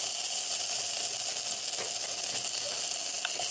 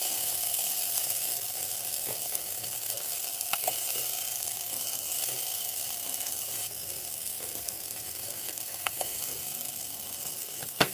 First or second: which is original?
first